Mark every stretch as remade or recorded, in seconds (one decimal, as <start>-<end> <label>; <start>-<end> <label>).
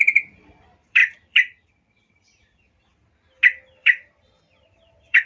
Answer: 0.0-2.9 remade; 2.9-3.8 recorded; 3.8-5.3 remade